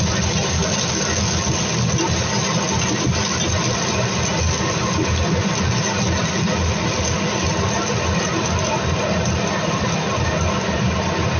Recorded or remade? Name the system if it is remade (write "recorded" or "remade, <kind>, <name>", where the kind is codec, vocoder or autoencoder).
recorded